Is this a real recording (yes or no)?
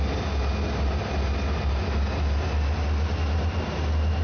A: yes